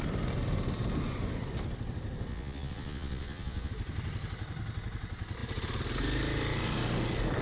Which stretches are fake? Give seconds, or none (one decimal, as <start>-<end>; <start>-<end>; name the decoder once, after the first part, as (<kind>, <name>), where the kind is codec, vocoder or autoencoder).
2.3-3.7 (vocoder, Vocos)